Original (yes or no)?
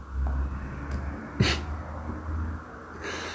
yes